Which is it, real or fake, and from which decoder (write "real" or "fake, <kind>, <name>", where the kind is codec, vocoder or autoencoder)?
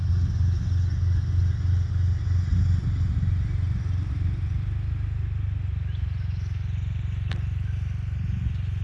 real